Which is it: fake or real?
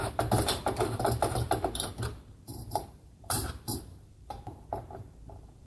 fake